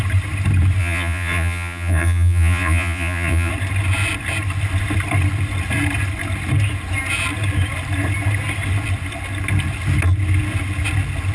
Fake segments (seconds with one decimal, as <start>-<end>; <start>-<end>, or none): 0.8-3.5